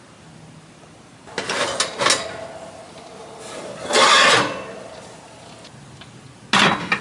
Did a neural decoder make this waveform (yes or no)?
no